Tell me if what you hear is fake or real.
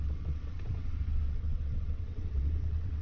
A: fake